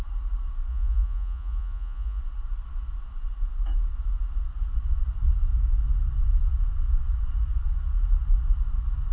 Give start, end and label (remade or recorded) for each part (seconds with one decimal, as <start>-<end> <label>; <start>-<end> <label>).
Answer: 0.0-0.7 recorded; 0.7-2.2 remade; 2.2-9.1 recorded